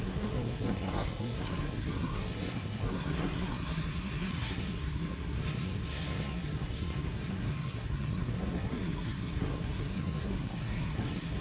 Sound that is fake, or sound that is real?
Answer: fake